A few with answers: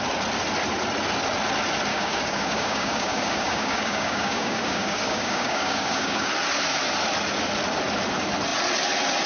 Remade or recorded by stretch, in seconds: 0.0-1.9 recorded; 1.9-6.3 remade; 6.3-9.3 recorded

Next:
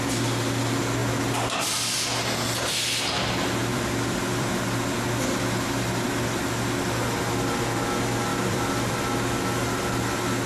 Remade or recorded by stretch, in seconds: 0.0-3.6 recorded; 3.6-4.5 remade; 4.5-8.3 recorded; 8.3-8.9 remade; 8.9-10.5 recorded

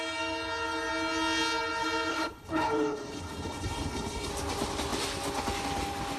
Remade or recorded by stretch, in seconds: 0.0-2.1 recorded; 2.1-4.3 remade; 4.3-6.2 recorded

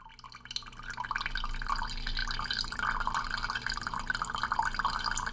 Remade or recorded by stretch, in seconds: 0.0-5.3 recorded